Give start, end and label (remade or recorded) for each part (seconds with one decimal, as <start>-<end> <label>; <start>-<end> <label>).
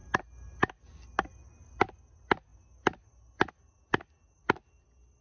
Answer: 0.0-5.2 recorded